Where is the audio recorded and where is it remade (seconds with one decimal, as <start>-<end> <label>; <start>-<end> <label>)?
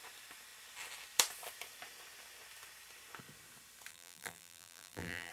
0.0-3.9 recorded; 3.9-5.3 remade